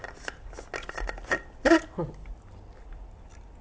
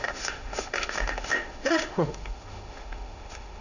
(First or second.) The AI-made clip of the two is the second